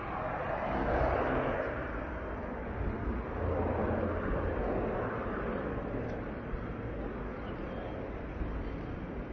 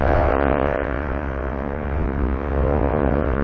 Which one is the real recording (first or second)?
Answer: first